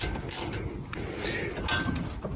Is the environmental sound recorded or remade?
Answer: recorded